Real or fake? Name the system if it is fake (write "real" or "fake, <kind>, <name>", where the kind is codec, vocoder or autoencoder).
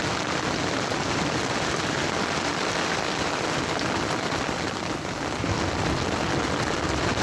real